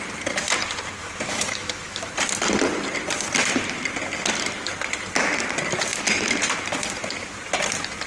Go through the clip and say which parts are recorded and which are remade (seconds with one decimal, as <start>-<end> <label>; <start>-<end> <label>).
0.0-1.0 recorded; 1.0-2.1 remade; 2.1-8.1 recorded